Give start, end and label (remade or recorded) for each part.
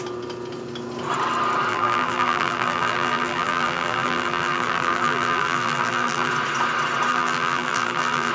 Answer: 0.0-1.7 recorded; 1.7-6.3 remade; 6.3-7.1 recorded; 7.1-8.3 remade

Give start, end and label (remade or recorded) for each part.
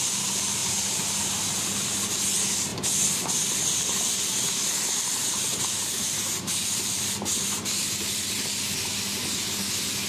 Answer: 0.0-0.6 recorded; 0.6-1.4 remade; 1.4-5.5 recorded; 5.5-8.0 remade; 8.0-10.1 recorded